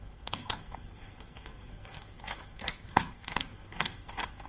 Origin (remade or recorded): remade